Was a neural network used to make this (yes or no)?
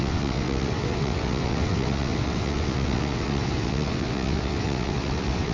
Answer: yes